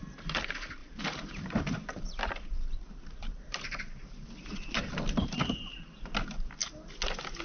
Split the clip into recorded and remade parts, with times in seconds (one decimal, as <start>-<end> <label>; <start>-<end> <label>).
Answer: 0.0-0.8 recorded; 0.8-4.9 remade; 4.9-7.4 recorded